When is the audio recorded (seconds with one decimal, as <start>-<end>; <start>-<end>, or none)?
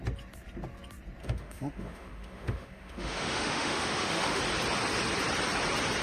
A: 0.0-1.2; 4.4-6.0